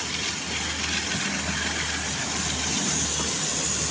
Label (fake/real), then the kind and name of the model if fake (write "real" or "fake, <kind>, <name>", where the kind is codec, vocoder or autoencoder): real